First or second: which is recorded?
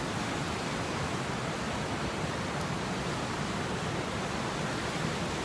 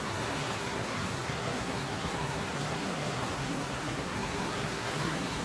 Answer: first